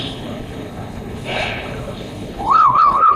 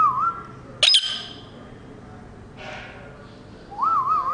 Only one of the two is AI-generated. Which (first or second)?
first